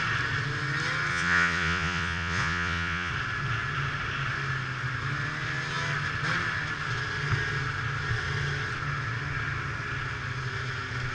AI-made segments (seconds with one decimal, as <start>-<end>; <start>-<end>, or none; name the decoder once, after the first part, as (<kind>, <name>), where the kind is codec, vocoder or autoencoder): 1.1-3.1 (vocoder, Vocos)